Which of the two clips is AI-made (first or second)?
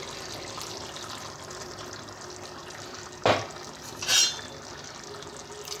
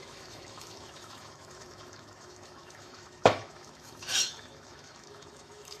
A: second